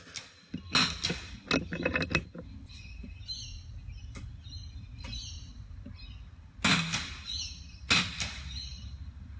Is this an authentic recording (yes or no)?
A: yes